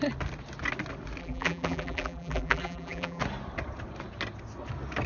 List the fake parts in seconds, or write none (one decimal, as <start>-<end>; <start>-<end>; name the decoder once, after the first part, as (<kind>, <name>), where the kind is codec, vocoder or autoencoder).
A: 1.2-3.2 (vocoder, BigVGAN v2)